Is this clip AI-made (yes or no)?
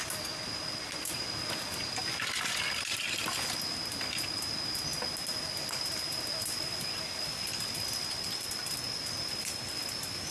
no